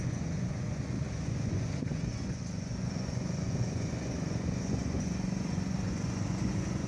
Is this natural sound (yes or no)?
no